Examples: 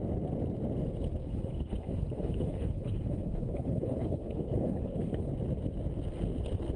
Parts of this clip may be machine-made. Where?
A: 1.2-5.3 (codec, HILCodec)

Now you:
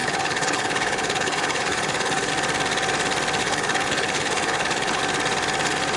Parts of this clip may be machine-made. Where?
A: 0.0-2.3 (codec, HILCodec); 3.4-5.0

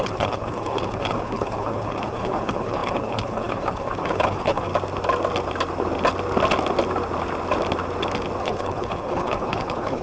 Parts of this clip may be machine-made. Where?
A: 0.0-4.7 (codec, HILCodec); 8.4-10.0

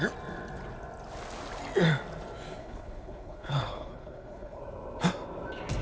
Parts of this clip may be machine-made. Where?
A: 2.6-4.6 (codec, HILCodec)

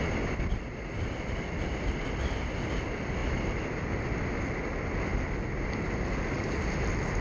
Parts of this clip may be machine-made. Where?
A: none

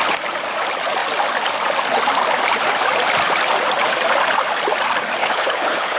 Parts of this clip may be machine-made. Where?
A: 5.2-6.0 (codec, HILCodec)